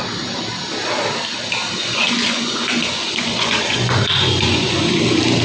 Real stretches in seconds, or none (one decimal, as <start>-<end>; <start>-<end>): 0.0-1.8; 5.0-5.4

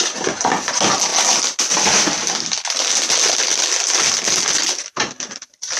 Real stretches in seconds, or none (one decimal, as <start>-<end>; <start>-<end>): 0.0-5.8

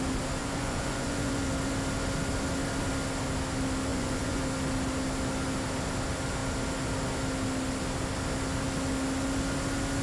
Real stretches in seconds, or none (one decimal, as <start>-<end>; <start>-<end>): 0.0-0.4; 1.4-3.9; 4.4-10.0

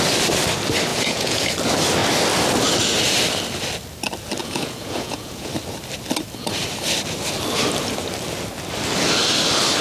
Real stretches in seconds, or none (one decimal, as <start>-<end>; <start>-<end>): 0.0-0.9; 1.5-4.4; 5.5-9.8

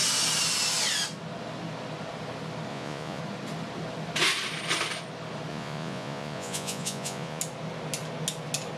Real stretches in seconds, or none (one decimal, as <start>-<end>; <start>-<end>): 0.0-2.7; 3.2-5.5; 7.4-8.8